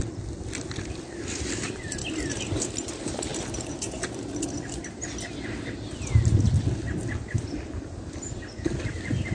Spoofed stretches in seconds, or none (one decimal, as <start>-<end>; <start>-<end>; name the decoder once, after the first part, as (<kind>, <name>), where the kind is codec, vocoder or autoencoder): 0.0-3.3 (vocoder, BigVGAN v2); 7.2-9.3

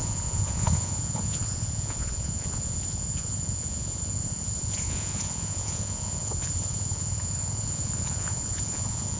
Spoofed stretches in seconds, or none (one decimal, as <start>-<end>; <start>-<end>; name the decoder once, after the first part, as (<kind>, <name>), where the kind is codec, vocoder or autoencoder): 0.0-9.2 (vocoder, Vocos)

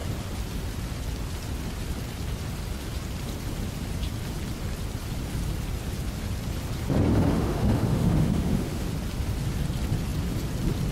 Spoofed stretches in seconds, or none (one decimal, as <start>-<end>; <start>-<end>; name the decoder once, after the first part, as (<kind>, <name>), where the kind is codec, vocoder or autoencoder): 7.1-8.9 (autoencoder, DAC-VAE)

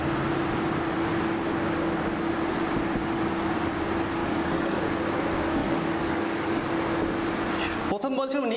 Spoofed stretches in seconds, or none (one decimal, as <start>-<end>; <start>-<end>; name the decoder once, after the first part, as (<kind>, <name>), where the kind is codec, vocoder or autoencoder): 4.2-4.8 (codec, DAC); 5.6-6.6

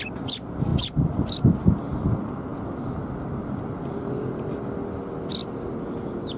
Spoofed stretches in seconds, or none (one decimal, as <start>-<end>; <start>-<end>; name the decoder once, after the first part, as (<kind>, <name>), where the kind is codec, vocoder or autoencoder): 0.7-1.9 (vocoder, BigVGAN v2)

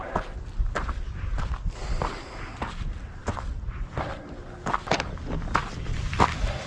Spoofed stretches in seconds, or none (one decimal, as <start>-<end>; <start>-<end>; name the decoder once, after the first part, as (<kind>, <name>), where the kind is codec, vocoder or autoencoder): 3.2-4.1 (vocoder, BigVGAN v2); 5.6-6.7

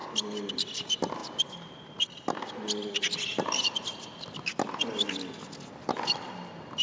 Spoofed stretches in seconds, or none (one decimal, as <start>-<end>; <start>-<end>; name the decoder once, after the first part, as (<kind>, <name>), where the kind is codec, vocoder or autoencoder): none

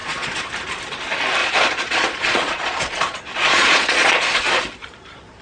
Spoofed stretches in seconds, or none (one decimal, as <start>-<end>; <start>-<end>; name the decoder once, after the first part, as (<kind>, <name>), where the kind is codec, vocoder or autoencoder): 0.0-0.5 (vocoder, Vocos); 1.4-4.6